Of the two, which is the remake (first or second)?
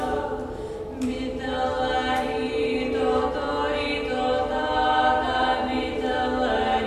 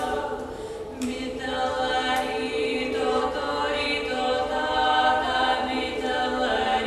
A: second